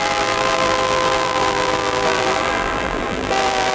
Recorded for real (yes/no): no